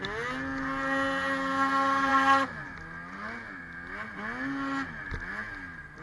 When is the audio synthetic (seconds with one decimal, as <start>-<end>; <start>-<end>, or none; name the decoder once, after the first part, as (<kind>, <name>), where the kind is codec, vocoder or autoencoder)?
none